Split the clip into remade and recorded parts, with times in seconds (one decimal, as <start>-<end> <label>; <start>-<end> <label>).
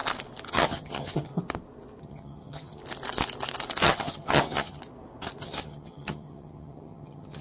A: 0.0-0.5 recorded; 0.5-1.3 remade; 1.3-2.0 recorded; 2.0-2.8 remade; 2.8-3.8 recorded; 3.8-4.8 remade; 4.8-5.4 recorded; 5.4-7.4 remade